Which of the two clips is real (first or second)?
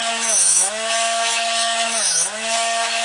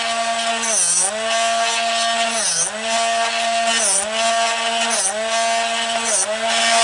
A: second